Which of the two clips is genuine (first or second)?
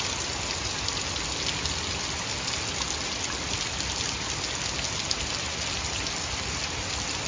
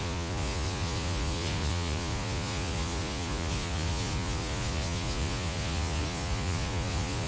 first